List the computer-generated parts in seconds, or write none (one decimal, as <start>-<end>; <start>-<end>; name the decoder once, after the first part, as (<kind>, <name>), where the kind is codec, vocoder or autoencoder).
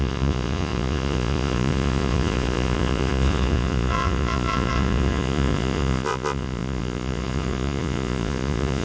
0.0-8.8 (vocoder, Vocos)